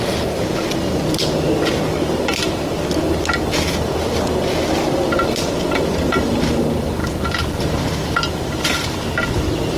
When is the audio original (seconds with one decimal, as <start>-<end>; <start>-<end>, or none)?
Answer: 0.0-9.8